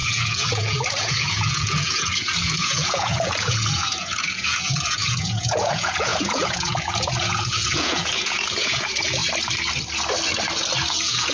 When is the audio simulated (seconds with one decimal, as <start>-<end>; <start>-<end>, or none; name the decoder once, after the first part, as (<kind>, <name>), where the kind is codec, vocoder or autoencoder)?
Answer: 0.0-9.2 (vocoder, Vocos); 10.9-11.3